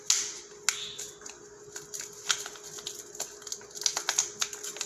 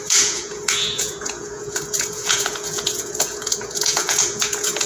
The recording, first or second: first